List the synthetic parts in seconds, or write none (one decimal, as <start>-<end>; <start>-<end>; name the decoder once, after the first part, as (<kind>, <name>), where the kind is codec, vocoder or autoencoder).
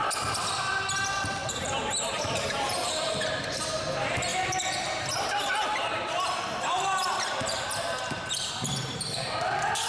1.4-3.6 (vocoder, BigVGAN v2); 4.3-9.4